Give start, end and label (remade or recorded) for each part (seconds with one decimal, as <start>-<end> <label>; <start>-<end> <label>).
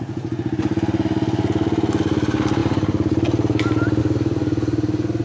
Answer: 0.0-5.2 recorded